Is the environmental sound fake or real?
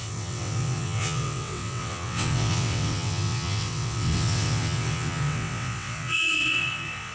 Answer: fake